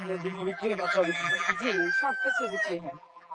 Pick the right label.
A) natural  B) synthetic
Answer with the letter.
B